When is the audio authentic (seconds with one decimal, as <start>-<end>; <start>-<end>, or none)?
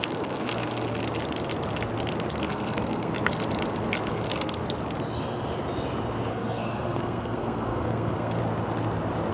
1.0-2.4; 3.1-4.1; 4.6-6.3; 8.4-9.3